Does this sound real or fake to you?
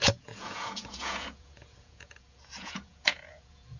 fake